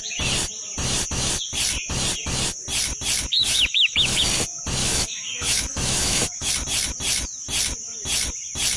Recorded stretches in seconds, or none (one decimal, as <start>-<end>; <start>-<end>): 0.0-3.4; 4.2-4.8; 6.5-8.8

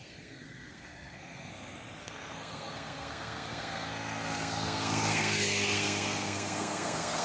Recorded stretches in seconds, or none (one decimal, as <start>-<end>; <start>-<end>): 1.5-2.0

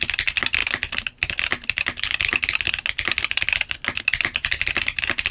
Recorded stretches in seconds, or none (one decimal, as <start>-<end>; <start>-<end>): 0.0-5.3